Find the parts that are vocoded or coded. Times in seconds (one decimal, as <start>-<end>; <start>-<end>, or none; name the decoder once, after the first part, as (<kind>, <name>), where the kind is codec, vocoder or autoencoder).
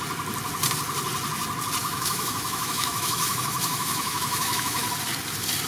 1.8-4.8 (autoencoder, DAC-VAE)